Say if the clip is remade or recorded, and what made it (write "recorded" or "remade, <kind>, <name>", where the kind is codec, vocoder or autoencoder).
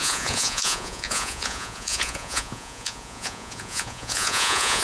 remade, vocoder, Vocos